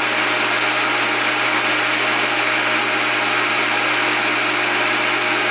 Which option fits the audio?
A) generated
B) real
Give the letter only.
B